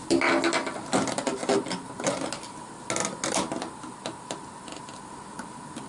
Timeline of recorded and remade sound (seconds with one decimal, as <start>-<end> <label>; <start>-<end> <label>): 0.0-1.3 recorded; 1.3-2.1 remade; 2.1-5.9 recorded

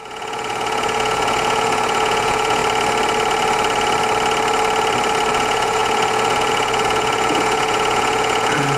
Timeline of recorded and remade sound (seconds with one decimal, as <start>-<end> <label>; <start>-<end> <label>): 0.0-2.6 remade; 2.6-5.3 recorded; 5.3-8.8 remade

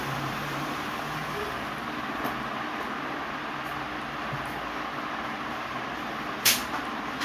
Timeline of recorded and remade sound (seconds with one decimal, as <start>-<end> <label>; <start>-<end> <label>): 0.0-1.2 remade; 1.2-5.5 recorded; 5.5-7.2 remade

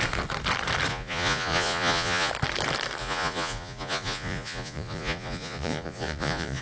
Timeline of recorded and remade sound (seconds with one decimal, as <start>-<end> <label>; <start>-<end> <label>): 0.0-0.9 recorded; 0.9-2.3 remade; 2.3-3.0 recorded; 3.0-6.6 remade